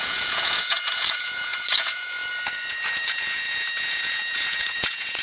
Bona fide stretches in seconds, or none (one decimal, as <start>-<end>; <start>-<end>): 2.2-2.7